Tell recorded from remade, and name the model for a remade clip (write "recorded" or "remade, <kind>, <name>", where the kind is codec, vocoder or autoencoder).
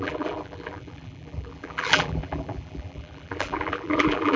remade, vocoder, BigVGAN v2